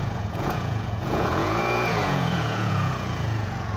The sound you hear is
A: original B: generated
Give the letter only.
B